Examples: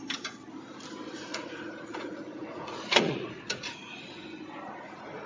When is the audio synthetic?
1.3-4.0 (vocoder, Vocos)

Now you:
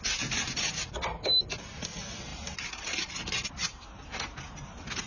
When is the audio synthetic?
2.3-5.1 (vocoder, BigVGAN v2)

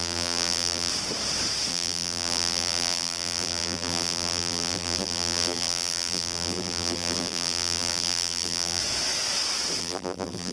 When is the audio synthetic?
0.0-0.9 (vocoder, BigVGAN v2); 1.7-8.8; 9.8-10.5